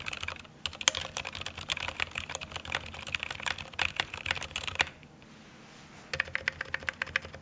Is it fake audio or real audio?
real